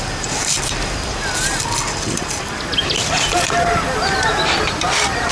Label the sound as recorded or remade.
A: remade